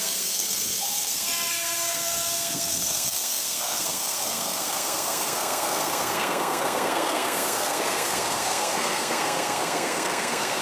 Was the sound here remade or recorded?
remade